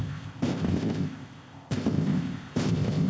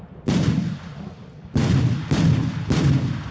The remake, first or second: first